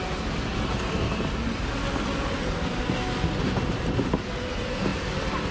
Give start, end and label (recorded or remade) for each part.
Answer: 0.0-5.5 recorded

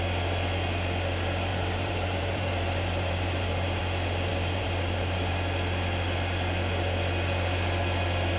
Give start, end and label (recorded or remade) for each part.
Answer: 0.0-1.5 recorded; 1.5-3.8 remade; 3.8-4.3 recorded; 4.3-5.3 remade; 5.3-8.4 recorded

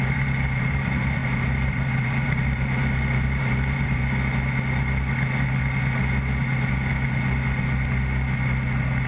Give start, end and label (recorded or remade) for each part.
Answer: 0.0-4.0 remade; 4.0-9.1 recorded

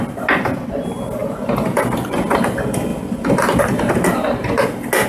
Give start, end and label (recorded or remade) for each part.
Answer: 0.0-5.1 recorded

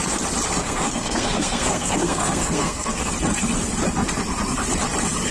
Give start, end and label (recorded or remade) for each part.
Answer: 0.0-0.6 recorded; 0.6-3.1 remade; 3.1-5.3 recorded

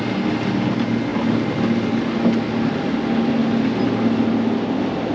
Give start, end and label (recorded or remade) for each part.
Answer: 0.0-5.1 recorded

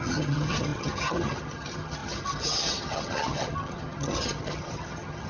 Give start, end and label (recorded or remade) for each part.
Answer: 0.0-5.3 remade

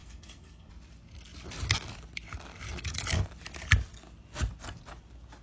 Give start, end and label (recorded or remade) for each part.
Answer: 0.0-0.7 remade; 0.7-5.4 recorded